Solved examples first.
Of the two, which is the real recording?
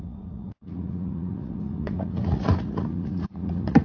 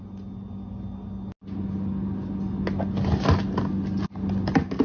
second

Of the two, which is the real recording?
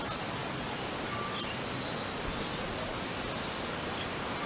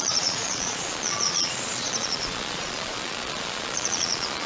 first